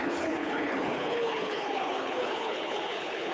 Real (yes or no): no